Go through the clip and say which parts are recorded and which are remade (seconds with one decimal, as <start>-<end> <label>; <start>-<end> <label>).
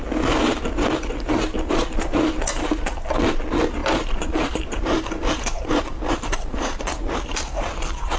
0.0-3.8 recorded; 3.8-6.8 remade; 6.8-8.2 recorded